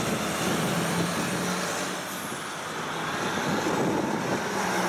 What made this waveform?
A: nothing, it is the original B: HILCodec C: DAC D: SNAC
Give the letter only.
A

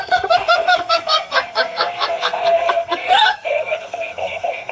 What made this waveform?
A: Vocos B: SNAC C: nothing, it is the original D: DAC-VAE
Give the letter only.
B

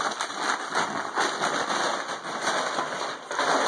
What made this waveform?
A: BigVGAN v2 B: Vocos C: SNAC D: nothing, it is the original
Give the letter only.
D